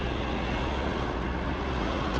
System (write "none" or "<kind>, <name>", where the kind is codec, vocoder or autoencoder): vocoder, Vocos